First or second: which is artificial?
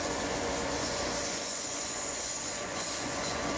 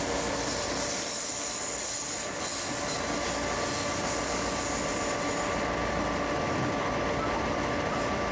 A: first